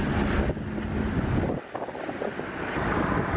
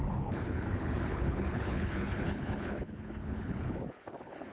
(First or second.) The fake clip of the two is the second